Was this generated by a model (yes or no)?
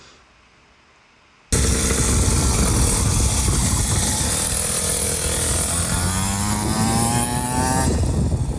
no